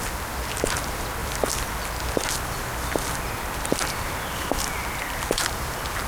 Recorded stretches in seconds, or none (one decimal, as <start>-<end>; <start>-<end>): 0.0-6.1